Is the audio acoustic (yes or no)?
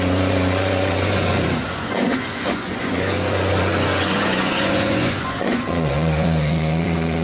no